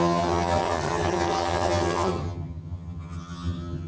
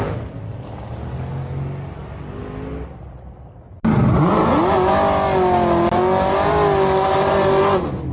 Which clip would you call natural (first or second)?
second